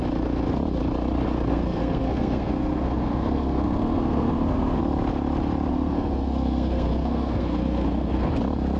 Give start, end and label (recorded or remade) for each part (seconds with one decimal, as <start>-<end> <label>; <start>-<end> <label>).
0.0-1.5 recorded; 1.5-4.8 remade; 4.8-5.7 recorded; 5.7-8.3 remade; 8.3-8.8 recorded